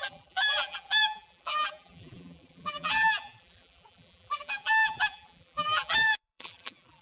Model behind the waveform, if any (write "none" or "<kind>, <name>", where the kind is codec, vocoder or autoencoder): vocoder, BigVGAN v2